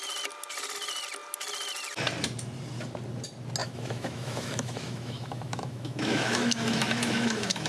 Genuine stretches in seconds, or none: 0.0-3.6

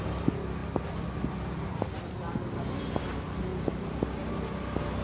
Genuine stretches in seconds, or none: 0.0-5.0

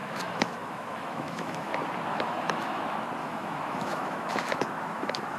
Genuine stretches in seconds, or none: 1.7-2.1; 2.8-3.2

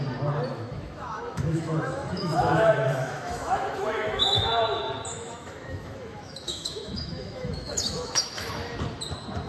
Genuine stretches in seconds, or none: 0.0-0.5; 4.5-5.1; 8.5-9.5

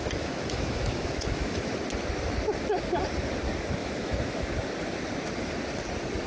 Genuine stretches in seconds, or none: 1.7-3.8; 4.5-6.3

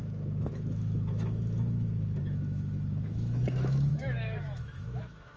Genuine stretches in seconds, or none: none